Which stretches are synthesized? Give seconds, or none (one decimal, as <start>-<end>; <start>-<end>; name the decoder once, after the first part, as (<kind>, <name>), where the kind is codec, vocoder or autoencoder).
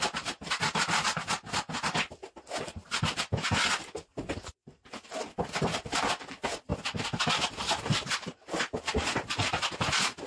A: none